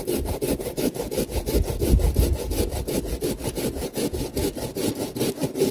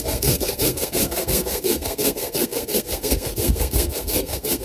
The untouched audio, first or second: first